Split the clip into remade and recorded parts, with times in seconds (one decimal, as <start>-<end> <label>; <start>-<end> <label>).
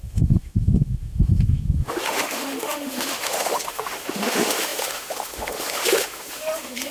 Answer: 0.0-6.9 remade